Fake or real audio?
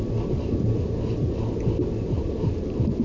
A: real